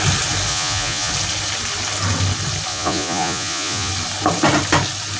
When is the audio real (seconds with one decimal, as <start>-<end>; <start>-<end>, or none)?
0.0-0.5; 1.1-2.7; 3.9-5.2